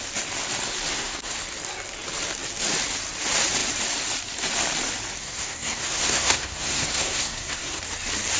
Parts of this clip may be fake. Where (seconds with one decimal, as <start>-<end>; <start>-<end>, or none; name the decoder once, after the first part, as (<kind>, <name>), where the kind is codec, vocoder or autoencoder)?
0.9-1.4 (codec, SNAC); 5.2-7.8